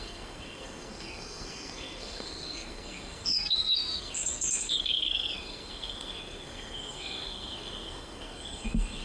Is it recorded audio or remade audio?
remade